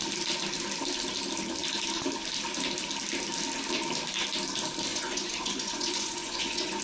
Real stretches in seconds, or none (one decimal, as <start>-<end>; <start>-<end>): 0.0-4.9